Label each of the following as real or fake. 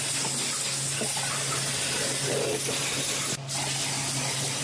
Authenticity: real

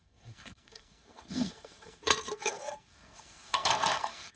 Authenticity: fake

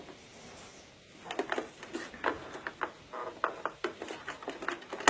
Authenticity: real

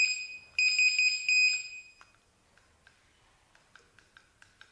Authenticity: real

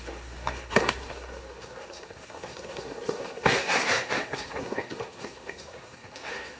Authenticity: fake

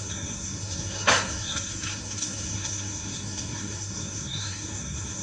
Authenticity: fake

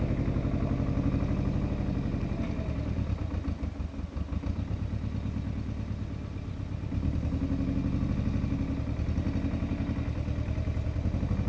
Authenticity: real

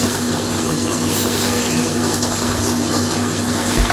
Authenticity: fake